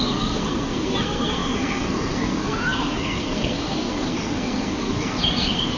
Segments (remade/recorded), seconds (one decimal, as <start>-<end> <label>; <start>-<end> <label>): 0.0-5.8 remade